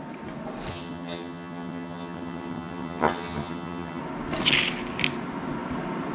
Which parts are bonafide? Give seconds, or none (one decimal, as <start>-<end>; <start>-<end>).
0.0-0.7; 4.0-6.1